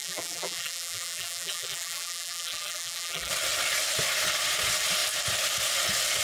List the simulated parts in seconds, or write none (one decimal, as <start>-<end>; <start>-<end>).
0.0-3.3

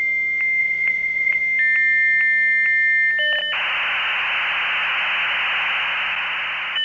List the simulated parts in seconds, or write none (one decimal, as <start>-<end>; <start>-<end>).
0.6-1.4